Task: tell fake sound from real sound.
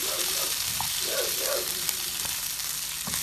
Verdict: fake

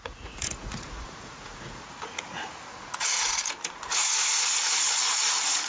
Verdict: fake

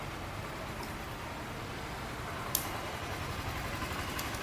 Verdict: real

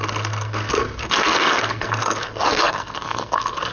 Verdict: fake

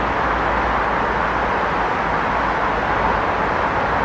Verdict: real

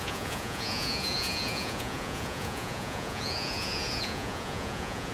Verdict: fake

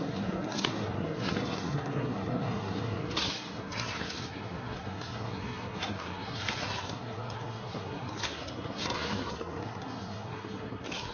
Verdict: fake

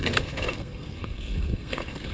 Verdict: fake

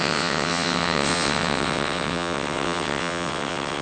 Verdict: fake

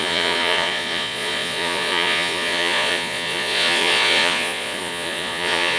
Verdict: fake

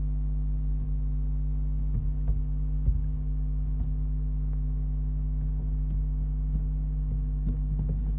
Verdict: real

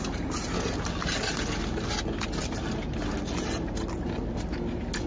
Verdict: real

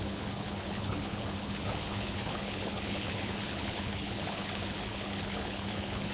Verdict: fake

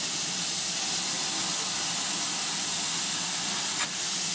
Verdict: real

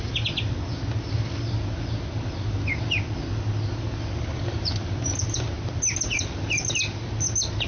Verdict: real